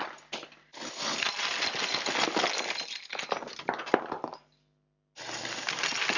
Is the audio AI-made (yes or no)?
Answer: no